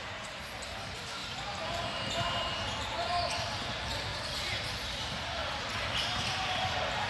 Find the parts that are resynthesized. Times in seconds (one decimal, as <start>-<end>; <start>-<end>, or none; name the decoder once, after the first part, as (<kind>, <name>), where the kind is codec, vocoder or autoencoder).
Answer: 0.0-4.1 (vocoder, BigVGAN v2); 4.8-7.1